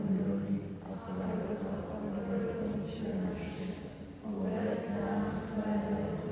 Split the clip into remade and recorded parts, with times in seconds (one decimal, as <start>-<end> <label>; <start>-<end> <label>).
0.0-3.1 recorded; 3.1-3.9 remade; 3.9-4.3 recorded; 4.3-4.8 remade; 4.8-6.3 recorded